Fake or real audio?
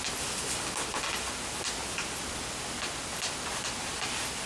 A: real